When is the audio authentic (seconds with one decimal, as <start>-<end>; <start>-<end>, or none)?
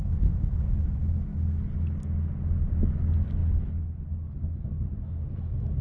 0.0-5.8